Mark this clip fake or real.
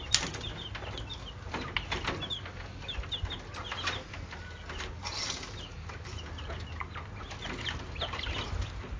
real